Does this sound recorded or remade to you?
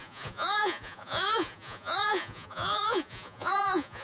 remade